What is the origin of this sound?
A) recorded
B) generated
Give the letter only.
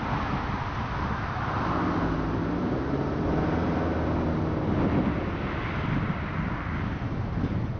A